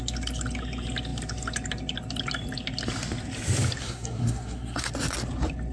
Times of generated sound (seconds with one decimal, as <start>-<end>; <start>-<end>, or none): 3.8-4.9